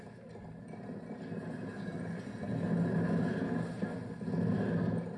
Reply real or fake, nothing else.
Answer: real